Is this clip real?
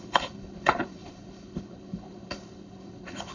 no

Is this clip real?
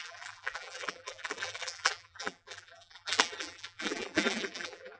no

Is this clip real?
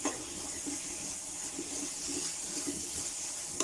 yes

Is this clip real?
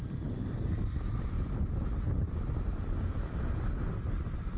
yes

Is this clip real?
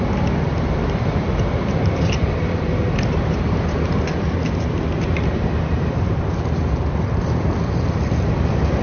no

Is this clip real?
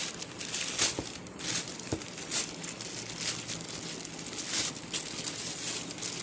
yes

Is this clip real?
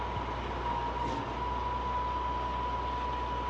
yes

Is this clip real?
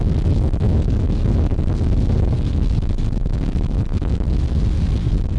no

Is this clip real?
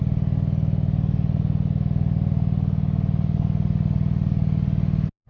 yes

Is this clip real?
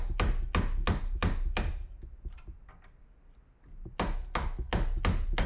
yes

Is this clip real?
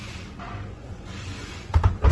no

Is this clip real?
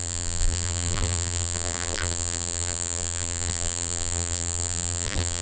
no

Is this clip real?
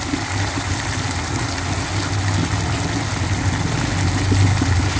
yes